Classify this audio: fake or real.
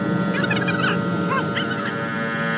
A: real